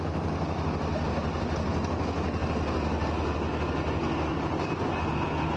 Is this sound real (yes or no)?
no